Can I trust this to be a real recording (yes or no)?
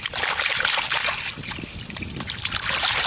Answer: yes